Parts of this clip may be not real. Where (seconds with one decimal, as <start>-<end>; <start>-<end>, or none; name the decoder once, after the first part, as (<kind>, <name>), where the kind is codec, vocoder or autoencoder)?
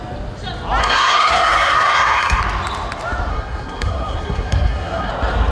0.8-2.4 (codec, SNAC); 3.3-5.1